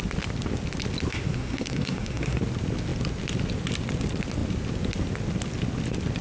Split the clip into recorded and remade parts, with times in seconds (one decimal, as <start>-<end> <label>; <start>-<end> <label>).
0.0-1.1 recorded; 1.1-2.4 remade; 2.4-6.2 recorded